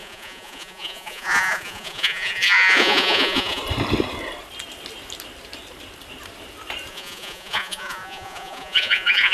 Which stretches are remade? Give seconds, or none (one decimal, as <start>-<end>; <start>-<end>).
0.0-3.6; 6.9-9.3